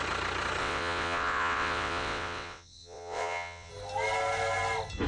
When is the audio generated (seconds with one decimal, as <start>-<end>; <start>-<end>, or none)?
0.6-3.7